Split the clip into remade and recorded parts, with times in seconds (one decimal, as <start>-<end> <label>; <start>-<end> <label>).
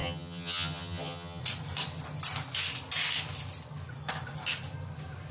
0.0-1.4 remade; 1.4-5.3 recorded